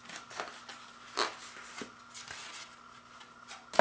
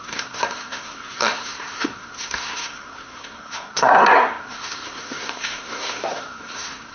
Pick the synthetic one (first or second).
second